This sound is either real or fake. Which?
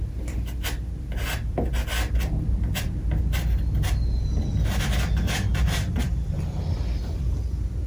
real